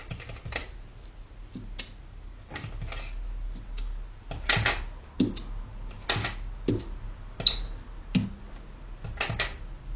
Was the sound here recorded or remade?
recorded